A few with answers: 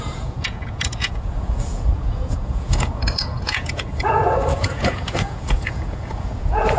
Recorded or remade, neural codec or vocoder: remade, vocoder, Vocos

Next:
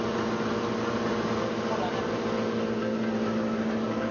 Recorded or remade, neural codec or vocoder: recorded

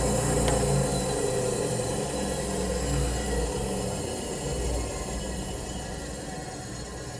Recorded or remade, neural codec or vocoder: recorded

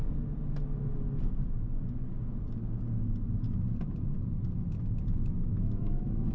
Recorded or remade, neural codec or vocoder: recorded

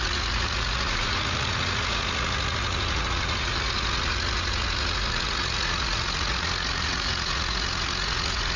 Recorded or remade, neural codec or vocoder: remade, vocoder, Vocos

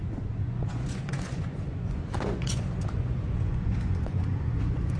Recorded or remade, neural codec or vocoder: remade, vocoder, Vocos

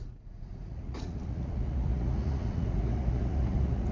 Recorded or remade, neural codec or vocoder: remade, vocoder, Vocos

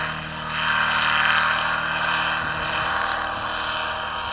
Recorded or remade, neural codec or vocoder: recorded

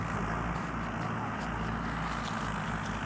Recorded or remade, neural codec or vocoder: recorded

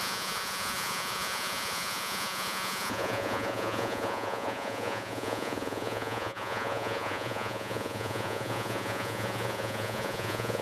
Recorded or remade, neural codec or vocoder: remade, vocoder, Vocos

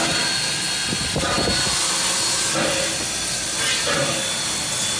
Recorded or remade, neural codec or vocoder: recorded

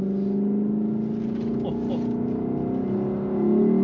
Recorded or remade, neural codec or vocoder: recorded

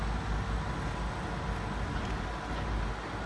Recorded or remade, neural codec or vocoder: recorded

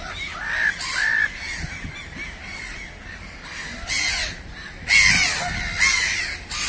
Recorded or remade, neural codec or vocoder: recorded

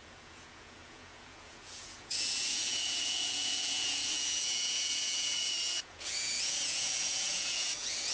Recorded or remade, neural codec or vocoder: remade, vocoder, Vocos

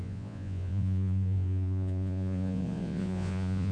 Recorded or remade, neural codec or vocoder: remade, vocoder, Vocos